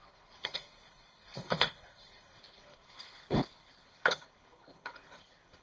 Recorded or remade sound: remade